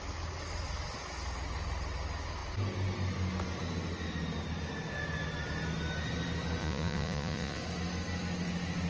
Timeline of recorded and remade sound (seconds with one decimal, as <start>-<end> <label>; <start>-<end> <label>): 0.0-6.6 recorded; 6.6-7.6 remade; 7.6-8.9 recorded